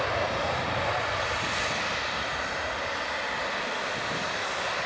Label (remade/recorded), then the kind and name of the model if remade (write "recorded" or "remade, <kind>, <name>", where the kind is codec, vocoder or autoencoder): recorded